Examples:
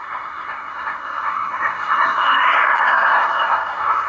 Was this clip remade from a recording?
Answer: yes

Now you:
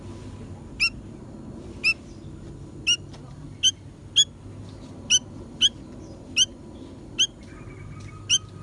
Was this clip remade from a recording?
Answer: no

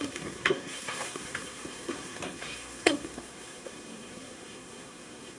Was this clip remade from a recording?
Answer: yes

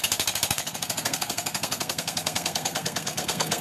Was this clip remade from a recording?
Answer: yes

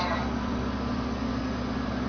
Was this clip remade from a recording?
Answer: no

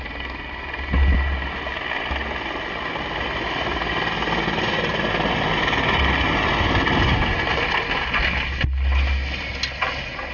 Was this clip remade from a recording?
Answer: no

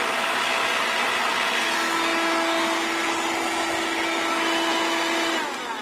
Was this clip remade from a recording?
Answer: no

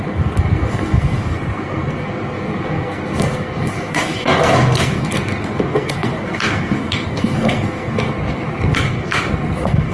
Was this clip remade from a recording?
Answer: yes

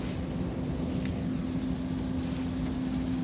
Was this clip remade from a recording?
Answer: no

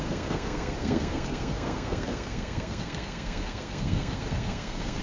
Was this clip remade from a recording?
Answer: yes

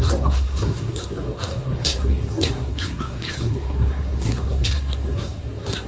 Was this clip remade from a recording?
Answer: yes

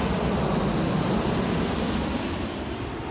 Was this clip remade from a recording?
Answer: no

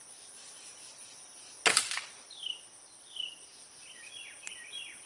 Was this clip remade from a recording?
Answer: no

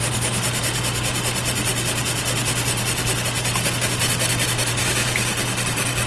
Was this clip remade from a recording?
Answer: no